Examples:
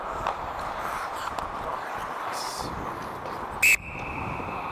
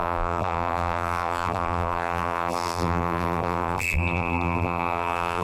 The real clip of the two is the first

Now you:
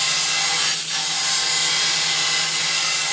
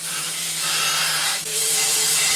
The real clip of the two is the first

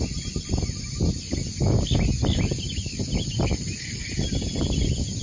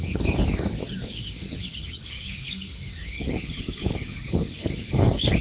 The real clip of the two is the first